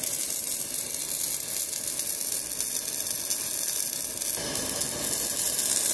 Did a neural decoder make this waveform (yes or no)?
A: no